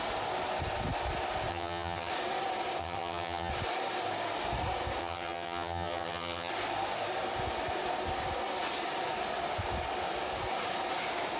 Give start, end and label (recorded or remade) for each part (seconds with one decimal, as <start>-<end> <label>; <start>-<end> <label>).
0.0-1.5 recorded; 1.5-2.1 remade; 2.1-2.8 recorded; 2.8-3.5 remade; 3.5-5.0 recorded; 5.0-6.5 remade; 6.5-11.4 recorded